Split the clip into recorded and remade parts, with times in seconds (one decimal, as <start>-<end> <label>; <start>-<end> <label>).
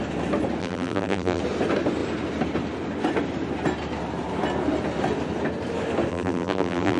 0.0-0.6 recorded; 0.6-1.4 remade; 1.4-6.1 recorded; 6.1-7.0 remade